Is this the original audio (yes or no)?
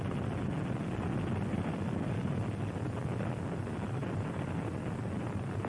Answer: yes